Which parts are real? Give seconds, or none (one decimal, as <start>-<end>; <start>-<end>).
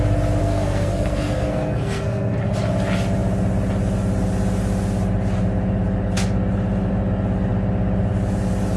0.0-0.4; 2.4-8.8